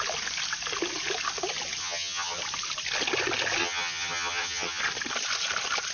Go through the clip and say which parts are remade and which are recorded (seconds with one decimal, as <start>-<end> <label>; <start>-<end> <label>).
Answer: 0.0-1.8 recorded; 1.8-2.4 remade; 2.4-3.6 recorded; 3.6-4.8 remade; 4.8-5.9 recorded